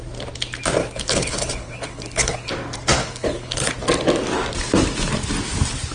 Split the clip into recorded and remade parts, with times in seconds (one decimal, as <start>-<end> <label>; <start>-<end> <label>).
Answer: 0.0-0.8 recorded; 0.8-2.5 remade; 2.5-3.0 recorded; 3.0-3.7 remade; 3.7-5.9 recorded